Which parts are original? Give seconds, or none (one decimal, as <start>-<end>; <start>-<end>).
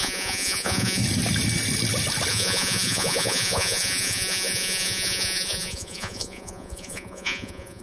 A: 1.0-2.3